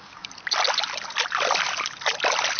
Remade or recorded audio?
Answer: recorded